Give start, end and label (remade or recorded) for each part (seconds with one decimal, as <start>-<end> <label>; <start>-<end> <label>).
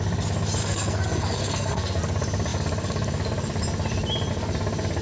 0.0-0.6 recorded; 0.6-2.0 remade; 2.0-5.0 recorded